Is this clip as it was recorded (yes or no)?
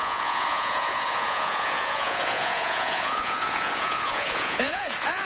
no